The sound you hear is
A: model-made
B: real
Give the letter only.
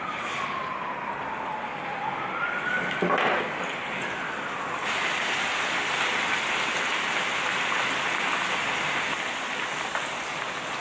B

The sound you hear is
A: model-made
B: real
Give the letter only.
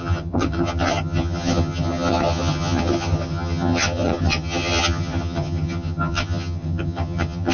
A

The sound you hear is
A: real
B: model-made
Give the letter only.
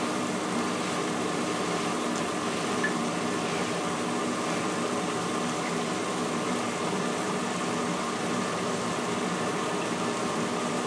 B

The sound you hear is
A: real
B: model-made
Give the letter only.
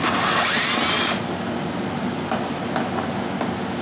A